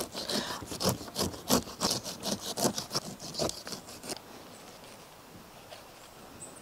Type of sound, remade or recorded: recorded